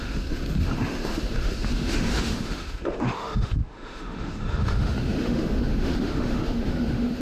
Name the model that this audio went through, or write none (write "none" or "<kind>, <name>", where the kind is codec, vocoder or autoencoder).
autoencoder, DAC-VAE